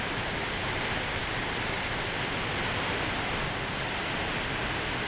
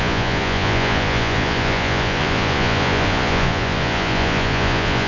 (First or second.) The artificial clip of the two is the second